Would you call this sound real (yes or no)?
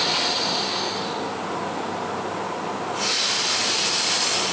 yes